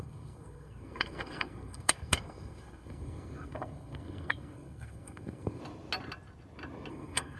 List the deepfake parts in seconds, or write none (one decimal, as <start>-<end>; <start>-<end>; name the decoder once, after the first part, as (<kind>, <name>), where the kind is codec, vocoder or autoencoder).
0.0-5.6 (codec, SNAC); 6.9-7.4